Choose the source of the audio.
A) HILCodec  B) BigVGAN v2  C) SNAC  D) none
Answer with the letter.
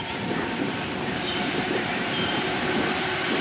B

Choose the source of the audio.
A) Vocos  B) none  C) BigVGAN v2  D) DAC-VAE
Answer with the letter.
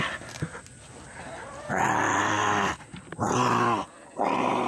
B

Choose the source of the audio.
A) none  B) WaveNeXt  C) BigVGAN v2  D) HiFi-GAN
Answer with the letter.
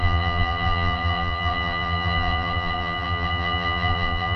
C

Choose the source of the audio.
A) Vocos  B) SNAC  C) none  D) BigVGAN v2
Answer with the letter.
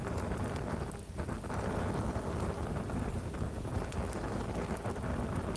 C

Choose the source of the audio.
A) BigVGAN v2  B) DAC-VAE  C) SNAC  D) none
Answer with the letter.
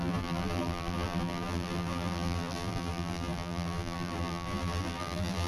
A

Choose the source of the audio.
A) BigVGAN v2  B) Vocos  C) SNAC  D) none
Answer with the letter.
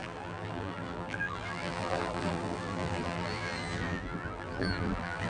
A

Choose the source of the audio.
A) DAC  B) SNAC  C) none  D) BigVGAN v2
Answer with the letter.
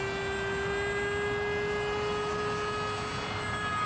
C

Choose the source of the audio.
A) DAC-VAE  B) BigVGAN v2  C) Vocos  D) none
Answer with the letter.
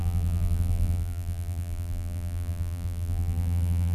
B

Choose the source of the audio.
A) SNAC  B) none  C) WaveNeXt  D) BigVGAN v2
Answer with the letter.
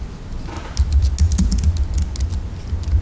B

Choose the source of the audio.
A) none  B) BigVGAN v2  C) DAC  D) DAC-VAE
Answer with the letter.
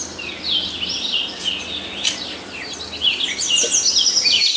A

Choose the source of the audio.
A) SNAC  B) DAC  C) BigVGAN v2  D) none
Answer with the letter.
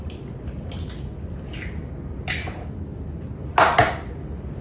D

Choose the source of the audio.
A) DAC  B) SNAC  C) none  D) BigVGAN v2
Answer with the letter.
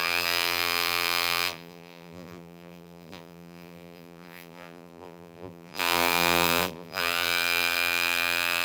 D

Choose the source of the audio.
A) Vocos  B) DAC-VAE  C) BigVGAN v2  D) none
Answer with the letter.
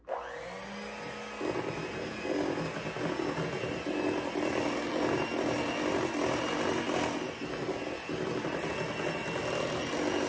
D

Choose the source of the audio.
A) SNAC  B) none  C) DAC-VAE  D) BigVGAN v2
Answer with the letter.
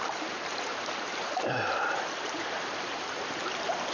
D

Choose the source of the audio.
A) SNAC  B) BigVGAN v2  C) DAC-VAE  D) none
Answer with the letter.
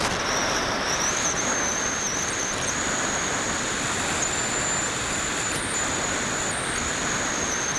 D